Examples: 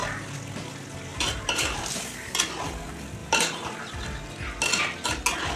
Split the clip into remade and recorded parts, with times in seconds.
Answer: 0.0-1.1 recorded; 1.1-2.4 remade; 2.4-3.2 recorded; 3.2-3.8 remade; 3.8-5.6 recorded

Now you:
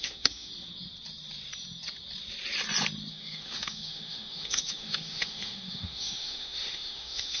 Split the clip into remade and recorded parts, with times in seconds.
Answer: 0.0-0.5 remade; 0.5-3.1 recorded; 3.1-7.4 remade

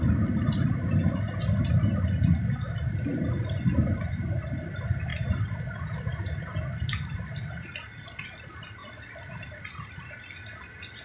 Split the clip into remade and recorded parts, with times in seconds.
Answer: 0.0-3.1 recorded; 3.1-4.0 remade; 4.0-11.0 recorded

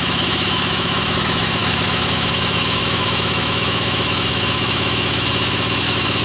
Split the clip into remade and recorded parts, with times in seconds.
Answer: 0.0-6.2 remade

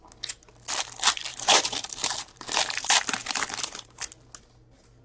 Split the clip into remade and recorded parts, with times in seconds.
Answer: 0.0-1.3 recorded; 1.3-4.1 remade; 4.1-5.0 recorded

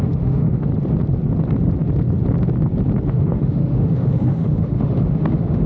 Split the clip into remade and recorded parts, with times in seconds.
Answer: 0.0-0.7 remade; 0.7-3.1 recorded; 3.1-5.7 remade